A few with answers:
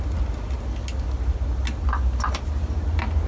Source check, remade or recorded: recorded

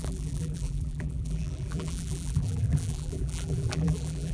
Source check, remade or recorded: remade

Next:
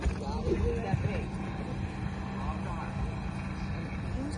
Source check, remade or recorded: recorded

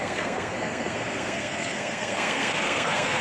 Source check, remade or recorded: remade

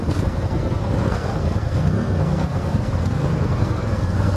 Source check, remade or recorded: remade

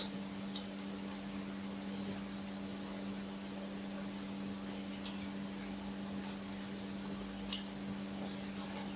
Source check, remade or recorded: recorded